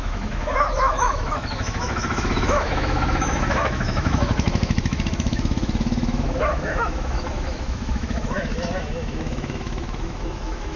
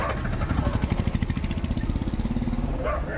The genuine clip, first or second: second